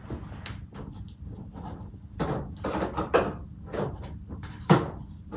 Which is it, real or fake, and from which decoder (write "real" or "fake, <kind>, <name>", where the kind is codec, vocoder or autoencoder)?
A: real